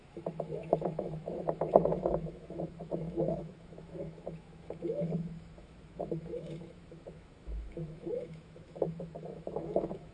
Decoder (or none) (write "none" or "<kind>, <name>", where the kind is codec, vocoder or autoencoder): autoencoder, DAC-VAE